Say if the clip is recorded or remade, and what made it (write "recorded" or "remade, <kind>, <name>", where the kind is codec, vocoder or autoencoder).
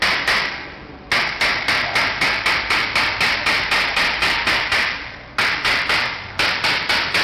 recorded